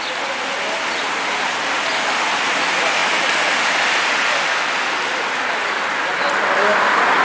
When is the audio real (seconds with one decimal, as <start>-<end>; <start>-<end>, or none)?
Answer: 0.0-7.2